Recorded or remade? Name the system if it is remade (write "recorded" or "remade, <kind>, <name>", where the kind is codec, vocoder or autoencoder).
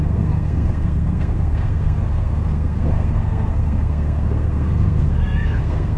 remade, codec, SNAC